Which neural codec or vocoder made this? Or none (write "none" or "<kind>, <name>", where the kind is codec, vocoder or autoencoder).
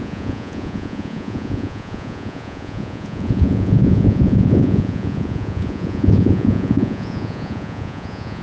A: vocoder, Vocos